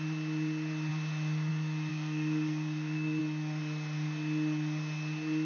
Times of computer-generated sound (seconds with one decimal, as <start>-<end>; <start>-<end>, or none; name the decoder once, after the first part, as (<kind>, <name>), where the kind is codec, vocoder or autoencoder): 1.9-3.2 (codec, SNAC)